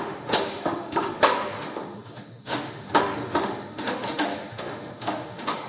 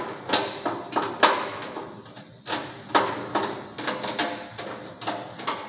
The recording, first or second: second